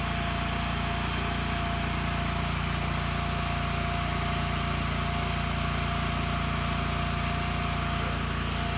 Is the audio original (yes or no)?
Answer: yes